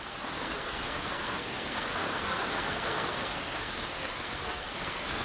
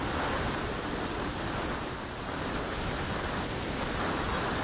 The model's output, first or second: first